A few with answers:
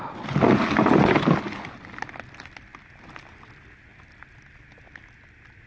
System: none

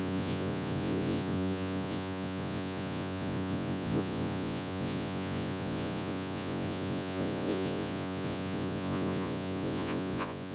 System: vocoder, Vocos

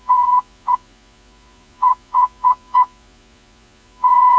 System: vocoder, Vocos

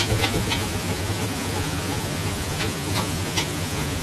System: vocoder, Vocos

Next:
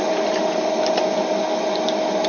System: none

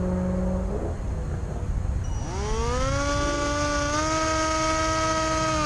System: none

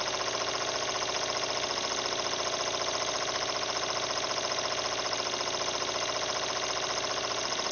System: none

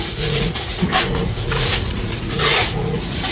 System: vocoder, Vocos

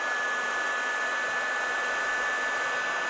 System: none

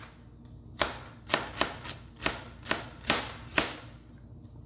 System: none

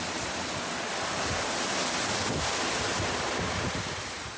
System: none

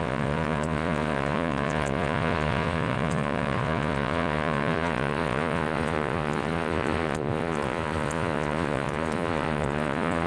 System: vocoder, Vocos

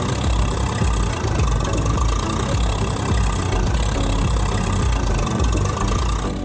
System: none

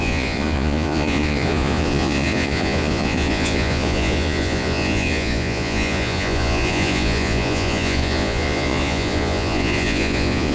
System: vocoder, Vocos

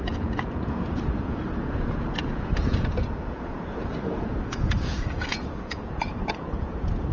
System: vocoder, Vocos